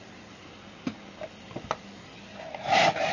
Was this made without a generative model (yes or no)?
yes